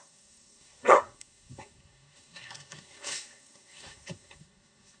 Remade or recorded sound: remade